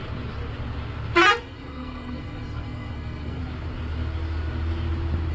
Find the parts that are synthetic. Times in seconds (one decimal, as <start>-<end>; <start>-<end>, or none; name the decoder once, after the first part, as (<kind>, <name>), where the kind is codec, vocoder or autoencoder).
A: 1.4-3.4 (codec, SNAC)